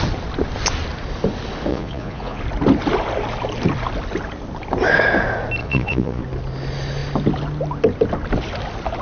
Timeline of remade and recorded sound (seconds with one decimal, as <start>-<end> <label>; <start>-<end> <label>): 0.0-1.7 recorded; 1.7-2.4 remade; 2.4-5.6 recorded; 5.6-6.2 remade; 6.2-9.0 recorded